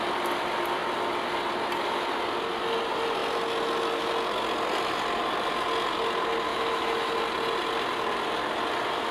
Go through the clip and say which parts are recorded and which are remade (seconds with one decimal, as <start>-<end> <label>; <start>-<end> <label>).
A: 0.0-6.5 recorded; 6.5-7.1 remade; 7.1-9.1 recorded